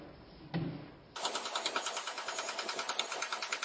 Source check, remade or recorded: recorded